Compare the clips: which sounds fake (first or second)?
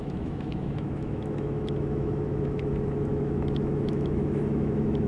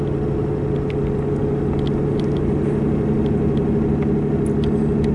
first